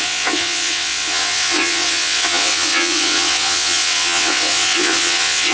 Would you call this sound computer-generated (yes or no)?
yes